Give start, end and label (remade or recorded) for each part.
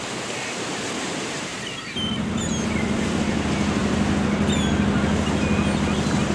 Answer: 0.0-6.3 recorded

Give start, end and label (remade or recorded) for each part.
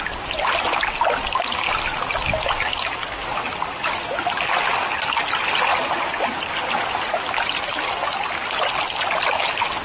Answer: 0.0-3.3 recorded; 3.3-4.2 remade; 4.2-9.8 recorded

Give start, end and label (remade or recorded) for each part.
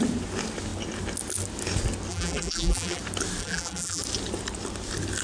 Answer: 0.0-2.1 recorded; 2.1-3.0 remade; 3.0-3.4 recorded; 3.4-4.0 remade; 4.0-5.2 recorded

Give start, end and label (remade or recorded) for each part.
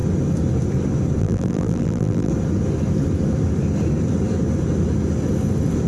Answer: 0.0-1.2 recorded; 1.2-2.3 remade; 2.3-5.9 recorded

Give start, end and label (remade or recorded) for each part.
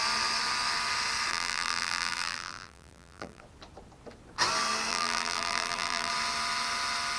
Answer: 0.0-1.3 recorded; 1.3-3.4 remade; 3.4-4.9 recorded; 4.9-6.1 remade; 6.1-7.2 recorded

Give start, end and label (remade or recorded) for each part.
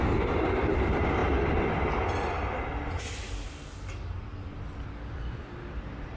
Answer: 0.0-6.2 recorded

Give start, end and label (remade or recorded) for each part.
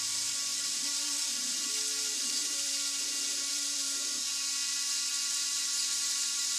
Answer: 0.0-6.6 remade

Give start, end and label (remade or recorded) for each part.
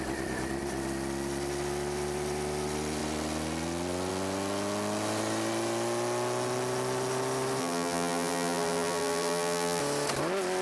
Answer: 0.0-7.6 recorded; 7.6-9.8 remade; 9.8-10.6 recorded